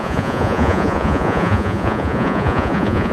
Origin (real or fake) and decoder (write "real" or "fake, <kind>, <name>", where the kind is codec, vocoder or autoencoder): fake, vocoder, Vocos